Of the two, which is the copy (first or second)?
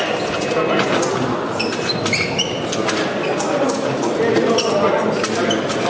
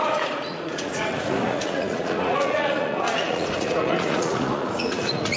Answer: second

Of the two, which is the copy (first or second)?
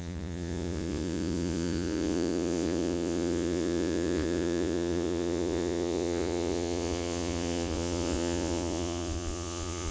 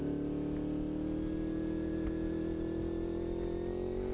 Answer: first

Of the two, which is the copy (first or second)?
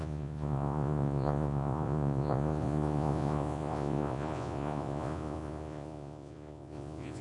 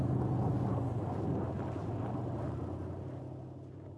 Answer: first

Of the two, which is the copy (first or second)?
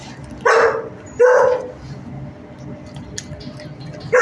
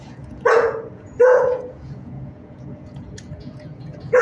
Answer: second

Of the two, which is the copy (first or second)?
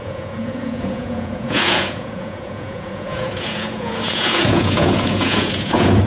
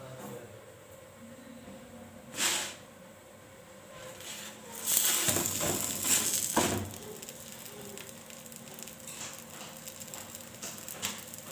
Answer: first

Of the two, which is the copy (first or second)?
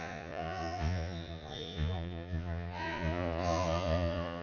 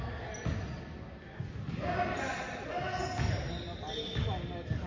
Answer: first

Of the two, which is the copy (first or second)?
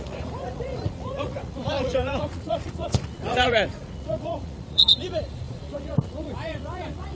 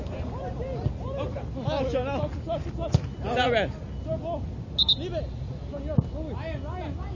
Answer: first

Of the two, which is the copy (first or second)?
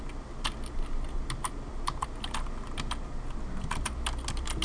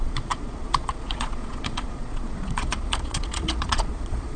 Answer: second